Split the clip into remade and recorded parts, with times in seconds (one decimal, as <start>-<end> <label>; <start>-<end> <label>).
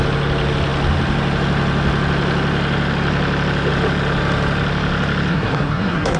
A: 0.0-5.3 recorded; 5.3-6.2 remade